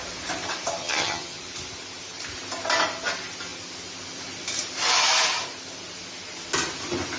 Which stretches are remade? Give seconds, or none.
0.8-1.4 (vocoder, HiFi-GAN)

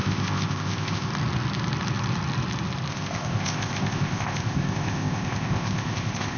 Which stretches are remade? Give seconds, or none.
0.0-1.1 (codec, ZipCodec); 2.9-6.4

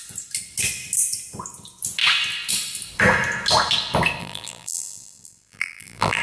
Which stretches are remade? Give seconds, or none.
4.2-6.2 (vocoder, BigVGAN v2)

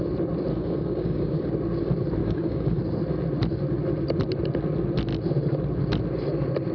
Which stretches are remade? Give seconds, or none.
0.5-1.5 (codec, DAC); 2.2-2.8

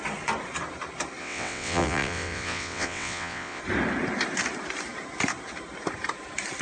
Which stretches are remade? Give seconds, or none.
1.2-3.6 (vocoder, WaveNeXt)

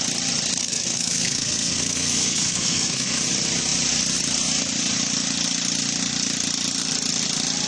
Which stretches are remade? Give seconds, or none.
0.6-3.2 (codec, SNAC)